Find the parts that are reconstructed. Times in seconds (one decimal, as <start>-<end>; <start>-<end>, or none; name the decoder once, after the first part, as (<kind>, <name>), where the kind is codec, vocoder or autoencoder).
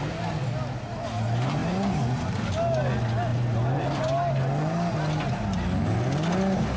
none